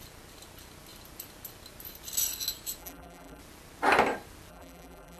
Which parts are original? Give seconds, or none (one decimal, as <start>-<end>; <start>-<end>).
0.0-2.8; 3.4-4.5